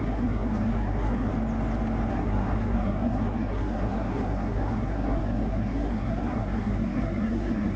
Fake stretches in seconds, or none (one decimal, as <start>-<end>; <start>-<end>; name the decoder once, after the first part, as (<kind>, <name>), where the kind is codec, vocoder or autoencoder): 0.0-1.3 (codec, SNAC); 2.1-7.8